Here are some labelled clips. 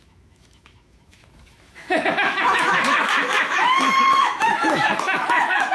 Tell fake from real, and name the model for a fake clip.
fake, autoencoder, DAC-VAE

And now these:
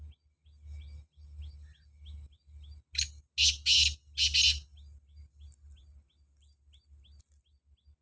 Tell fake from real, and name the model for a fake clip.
real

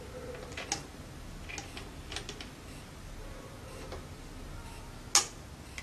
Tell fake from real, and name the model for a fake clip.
real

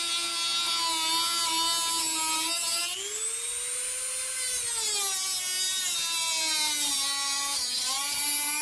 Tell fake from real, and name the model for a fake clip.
real